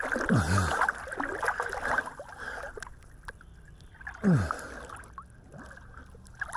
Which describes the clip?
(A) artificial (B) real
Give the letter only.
B